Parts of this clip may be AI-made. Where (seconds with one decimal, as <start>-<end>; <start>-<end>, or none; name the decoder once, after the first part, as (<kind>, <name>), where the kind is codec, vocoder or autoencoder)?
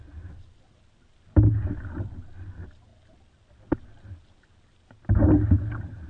none